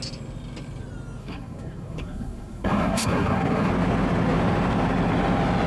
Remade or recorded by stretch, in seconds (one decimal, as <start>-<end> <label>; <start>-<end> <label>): 0.0-1.2 recorded; 1.2-3.7 remade; 3.7-5.7 recorded